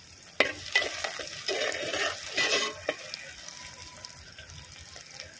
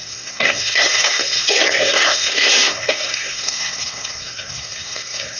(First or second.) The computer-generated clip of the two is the second